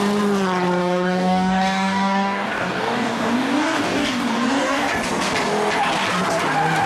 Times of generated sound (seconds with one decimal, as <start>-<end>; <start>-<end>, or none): 0.8-4.9